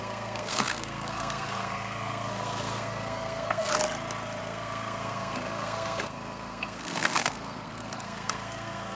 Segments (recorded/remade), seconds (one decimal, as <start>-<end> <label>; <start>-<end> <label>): 0.0-3.7 remade; 3.7-4.4 recorded; 4.4-8.9 remade